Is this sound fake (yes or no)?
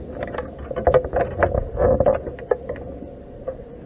no